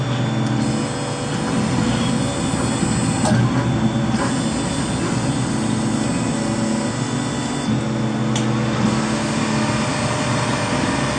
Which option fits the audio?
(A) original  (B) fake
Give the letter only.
A